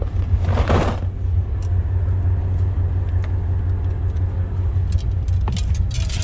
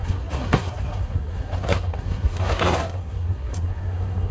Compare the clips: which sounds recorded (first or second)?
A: first